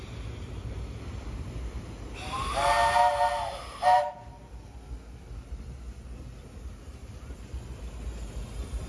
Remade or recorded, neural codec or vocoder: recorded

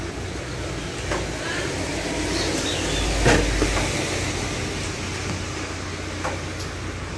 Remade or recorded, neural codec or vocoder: recorded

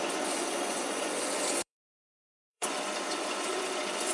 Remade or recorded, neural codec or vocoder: remade, vocoder, Vocos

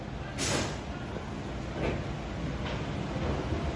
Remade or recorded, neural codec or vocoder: recorded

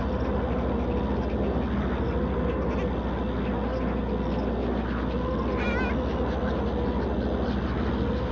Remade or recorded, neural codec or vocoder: recorded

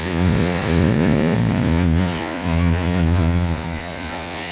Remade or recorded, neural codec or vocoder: remade, vocoder, Vocos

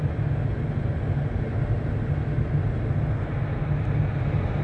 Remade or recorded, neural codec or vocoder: recorded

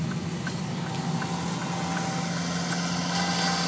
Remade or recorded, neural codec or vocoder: recorded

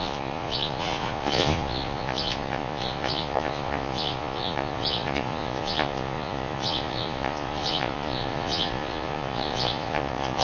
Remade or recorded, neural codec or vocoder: remade, vocoder, Vocos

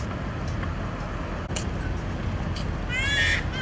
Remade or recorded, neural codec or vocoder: recorded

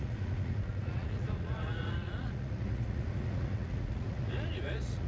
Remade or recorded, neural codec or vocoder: remade, vocoder, Vocos